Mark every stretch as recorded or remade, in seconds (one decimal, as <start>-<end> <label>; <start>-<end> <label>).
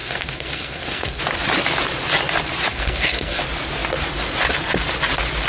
0.0-1.2 remade; 1.2-2.7 recorded; 2.7-3.4 remade; 3.4-5.5 recorded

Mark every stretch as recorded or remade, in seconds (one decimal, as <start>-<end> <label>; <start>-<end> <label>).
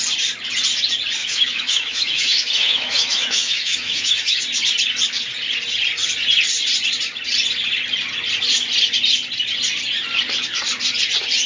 0.0-1.2 recorded; 1.2-4.4 remade; 4.4-11.5 recorded